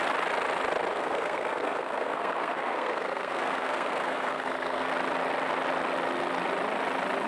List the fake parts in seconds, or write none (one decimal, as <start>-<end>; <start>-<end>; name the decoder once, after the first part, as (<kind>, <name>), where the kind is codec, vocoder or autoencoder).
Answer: 0.9-4.9 (codec, SNAC)